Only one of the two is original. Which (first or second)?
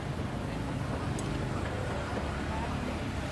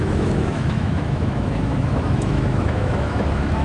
first